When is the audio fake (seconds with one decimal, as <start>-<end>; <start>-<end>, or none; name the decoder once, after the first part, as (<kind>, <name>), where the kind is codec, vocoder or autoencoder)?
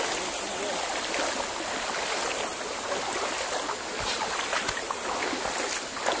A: none